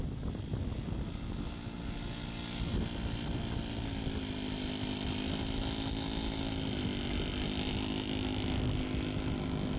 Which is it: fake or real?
real